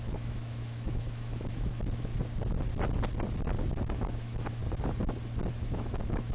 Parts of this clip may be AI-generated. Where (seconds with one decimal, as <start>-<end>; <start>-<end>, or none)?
0.0-2.1; 3.8-4.6; 5.5-6.3

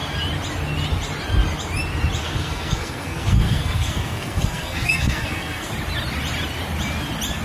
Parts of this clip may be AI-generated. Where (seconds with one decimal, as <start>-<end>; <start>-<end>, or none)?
2.2-5.7

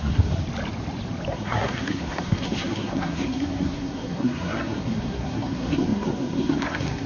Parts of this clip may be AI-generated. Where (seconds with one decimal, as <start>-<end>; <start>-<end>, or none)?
0.0-0.4; 1.3-7.1

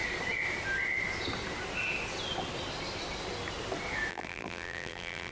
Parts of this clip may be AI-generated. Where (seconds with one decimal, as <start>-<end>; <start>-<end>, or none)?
4.1-5.3

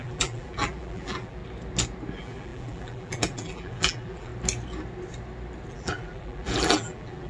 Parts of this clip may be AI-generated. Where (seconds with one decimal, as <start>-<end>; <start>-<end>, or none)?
0.0-1.4; 2.1-4.3; 5.7-7.3

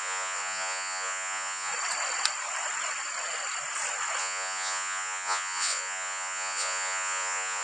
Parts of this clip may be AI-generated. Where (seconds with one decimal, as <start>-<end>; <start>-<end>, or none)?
0.0-1.7; 4.2-7.6

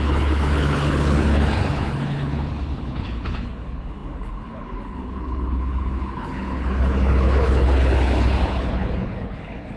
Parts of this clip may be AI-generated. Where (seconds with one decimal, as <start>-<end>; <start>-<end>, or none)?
0.0-9.8

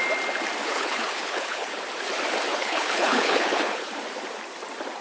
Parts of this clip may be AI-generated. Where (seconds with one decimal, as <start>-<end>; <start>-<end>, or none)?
0.6-1.8; 2.5-3.9